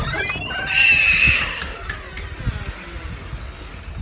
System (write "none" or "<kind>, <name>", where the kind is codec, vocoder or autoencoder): none